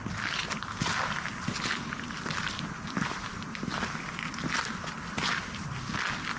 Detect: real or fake real